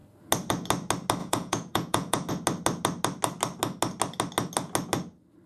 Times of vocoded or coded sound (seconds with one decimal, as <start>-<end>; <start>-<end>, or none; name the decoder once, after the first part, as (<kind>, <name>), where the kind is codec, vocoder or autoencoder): 1.2-2.3 (vocoder, Vocos)